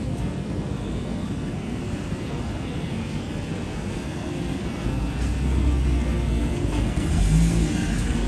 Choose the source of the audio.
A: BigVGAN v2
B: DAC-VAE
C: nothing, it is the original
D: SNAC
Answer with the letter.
D